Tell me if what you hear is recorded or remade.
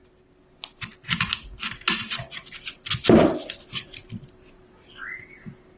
recorded